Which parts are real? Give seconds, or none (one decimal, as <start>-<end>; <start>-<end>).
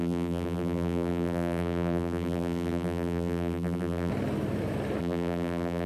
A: 4.1-5.0